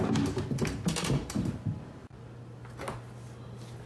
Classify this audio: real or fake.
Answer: real